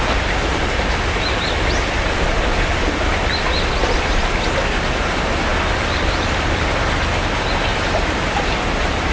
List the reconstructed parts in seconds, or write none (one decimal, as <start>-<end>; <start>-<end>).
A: 5.5-6.7; 7.7-8.2